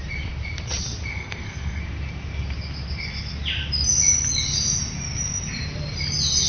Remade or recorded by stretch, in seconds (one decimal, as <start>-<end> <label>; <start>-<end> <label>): 0.0-1.1 recorded; 1.1-1.8 remade; 1.8-6.5 recorded